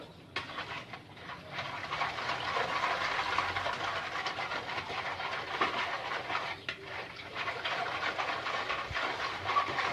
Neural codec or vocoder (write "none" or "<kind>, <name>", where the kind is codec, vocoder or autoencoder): none